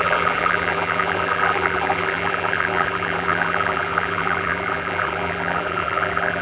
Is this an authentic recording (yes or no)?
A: no